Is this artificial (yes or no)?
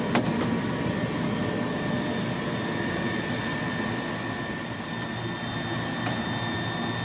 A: no